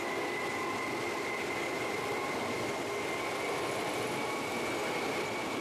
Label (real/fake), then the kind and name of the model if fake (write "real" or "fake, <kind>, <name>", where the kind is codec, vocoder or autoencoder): real